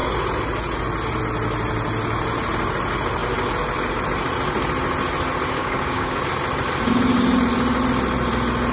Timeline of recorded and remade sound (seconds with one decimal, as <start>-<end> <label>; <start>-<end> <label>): 0.0-5.6 recorded; 5.6-6.2 remade; 6.2-8.7 recorded